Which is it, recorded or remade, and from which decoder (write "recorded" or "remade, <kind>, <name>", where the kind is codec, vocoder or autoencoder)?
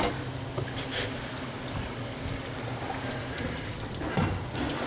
recorded